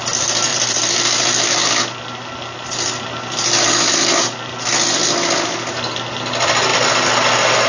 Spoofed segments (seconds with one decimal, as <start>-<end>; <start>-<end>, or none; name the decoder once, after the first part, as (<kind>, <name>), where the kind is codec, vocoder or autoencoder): none